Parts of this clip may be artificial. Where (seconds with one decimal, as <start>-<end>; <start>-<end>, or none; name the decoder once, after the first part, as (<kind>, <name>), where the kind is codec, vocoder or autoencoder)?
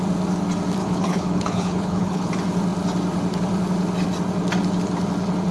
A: 0.8-2.3 (codec, HILCodec)